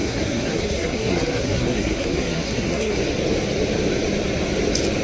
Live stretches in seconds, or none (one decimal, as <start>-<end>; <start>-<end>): 3.0-5.0